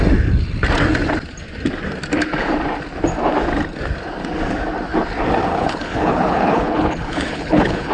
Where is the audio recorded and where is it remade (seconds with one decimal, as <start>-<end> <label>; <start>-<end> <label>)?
0.0-5.5 recorded; 5.5-7.9 remade